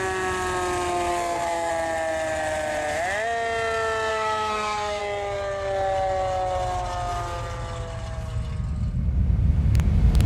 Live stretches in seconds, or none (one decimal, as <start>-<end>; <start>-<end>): 0.0-1.1; 1.7-4.1; 5.0-10.3